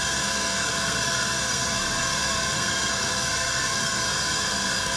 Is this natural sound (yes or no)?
no